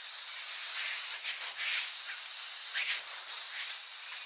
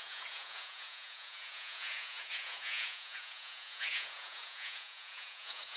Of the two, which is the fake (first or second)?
second